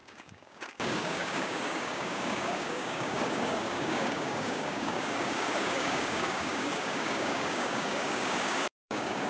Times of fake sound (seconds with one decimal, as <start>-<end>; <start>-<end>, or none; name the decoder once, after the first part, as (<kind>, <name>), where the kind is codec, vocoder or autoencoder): 0.0-9.3 (codec, DAC)